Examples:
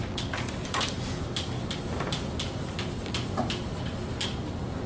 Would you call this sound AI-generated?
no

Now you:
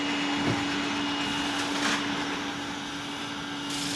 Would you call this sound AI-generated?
no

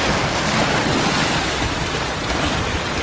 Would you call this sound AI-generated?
no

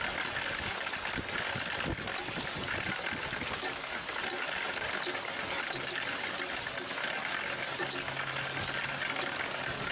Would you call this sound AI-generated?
no